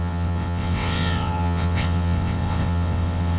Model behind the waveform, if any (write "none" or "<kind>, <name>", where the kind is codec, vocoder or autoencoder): vocoder, WaveNeXt